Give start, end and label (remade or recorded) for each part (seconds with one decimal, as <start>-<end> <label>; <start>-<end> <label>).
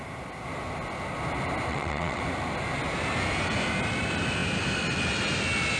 0.0-1.7 recorded; 1.7-2.2 remade; 2.2-5.8 recorded